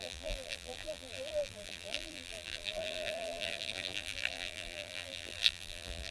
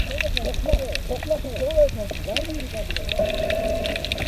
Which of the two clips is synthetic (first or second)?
first